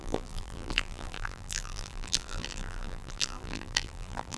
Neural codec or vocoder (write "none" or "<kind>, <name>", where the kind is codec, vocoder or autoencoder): vocoder, BigVGAN v2